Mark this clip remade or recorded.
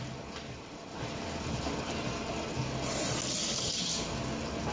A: recorded